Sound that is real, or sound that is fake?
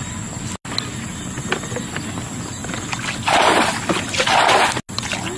real